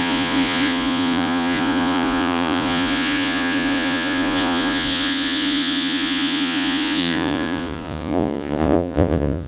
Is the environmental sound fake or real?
fake